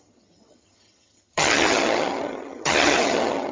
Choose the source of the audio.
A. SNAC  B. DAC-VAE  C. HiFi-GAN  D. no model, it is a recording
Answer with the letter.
C